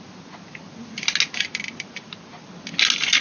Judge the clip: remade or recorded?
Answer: recorded